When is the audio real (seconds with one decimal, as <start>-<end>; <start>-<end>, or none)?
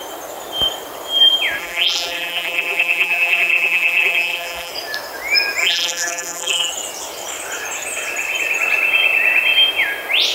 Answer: 0.0-1.6; 4.7-5.6; 6.7-10.3